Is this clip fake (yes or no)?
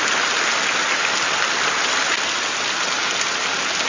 no